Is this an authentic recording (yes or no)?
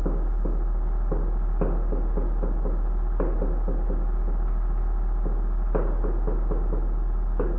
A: yes